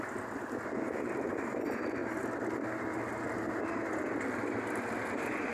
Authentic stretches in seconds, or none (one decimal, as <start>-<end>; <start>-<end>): 0.0-5.5